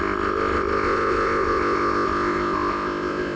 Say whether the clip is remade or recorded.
remade